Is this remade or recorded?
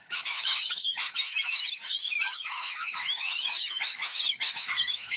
remade